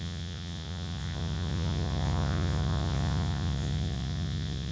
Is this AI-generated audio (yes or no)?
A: yes